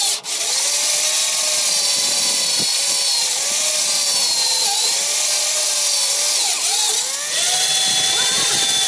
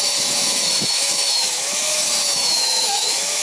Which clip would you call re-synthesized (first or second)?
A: second